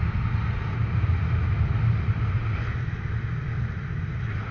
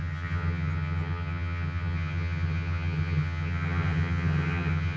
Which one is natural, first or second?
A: first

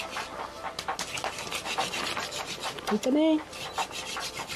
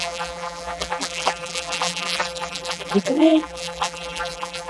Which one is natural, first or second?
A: first